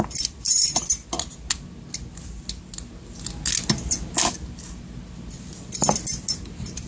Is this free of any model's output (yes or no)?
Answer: yes